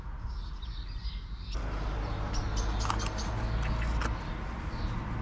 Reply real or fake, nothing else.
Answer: real